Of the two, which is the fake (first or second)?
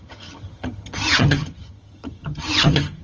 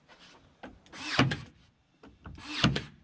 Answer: first